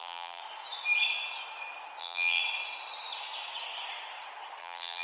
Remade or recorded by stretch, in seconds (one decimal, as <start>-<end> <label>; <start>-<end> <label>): 0.0-0.4 remade; 0.4-2.0 recorded; 2.0-2.4 remade; 2.4-4.6 recorded; 4.6-5.0 remade